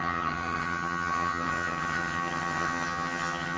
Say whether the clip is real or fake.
fake